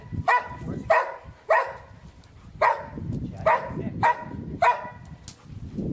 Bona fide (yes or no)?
yes